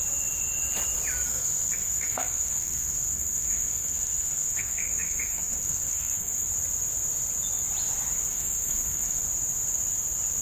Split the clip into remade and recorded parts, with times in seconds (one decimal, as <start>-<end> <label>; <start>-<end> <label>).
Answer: 0.0-1.3 recorded; 1.3-6.5 remade; 6.5-8.3 recorded; 8.3-9.2 remade; 9.2-10.4 recorded